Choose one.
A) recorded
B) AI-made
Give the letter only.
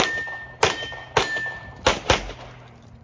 A